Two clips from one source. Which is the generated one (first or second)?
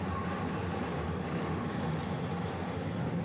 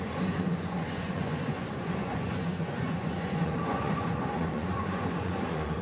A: second